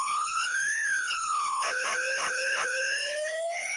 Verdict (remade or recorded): remade